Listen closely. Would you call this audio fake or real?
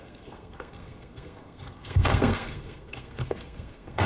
fake